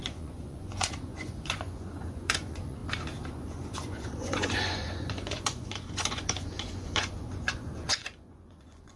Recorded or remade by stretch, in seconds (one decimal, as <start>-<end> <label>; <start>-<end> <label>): 0.0-2.8 remade; 2.8-3.3 recorded; 3.3-9.0 remade